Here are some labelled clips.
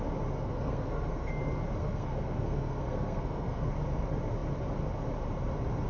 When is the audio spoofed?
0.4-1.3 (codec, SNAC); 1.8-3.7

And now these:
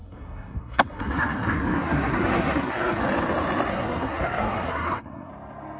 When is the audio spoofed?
0.0-3.0 (codec, SNAC); 3.7-5.3

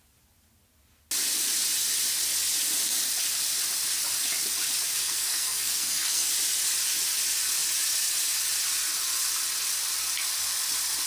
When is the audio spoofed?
5.0-6.3 (codec, SNAC)

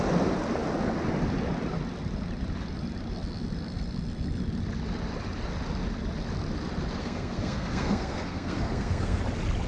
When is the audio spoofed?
7.0-9.2 (codec, SNAC)